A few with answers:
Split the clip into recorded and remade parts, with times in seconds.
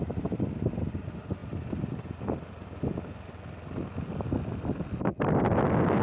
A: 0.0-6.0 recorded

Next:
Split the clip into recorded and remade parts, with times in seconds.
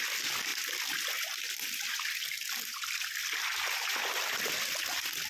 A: 0.0-5.3 recorded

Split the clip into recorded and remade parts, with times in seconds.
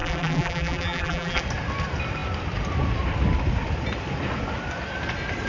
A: 0.0-1.4 remade; 1.4-5.5 recorded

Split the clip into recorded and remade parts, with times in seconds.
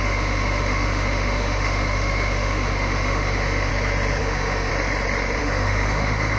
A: 0.0-3.7 remade; 3.7-4.2 recorded; 4.2-4.7 remade; 4.7-5.4 recorded; 5.4-6.4 remade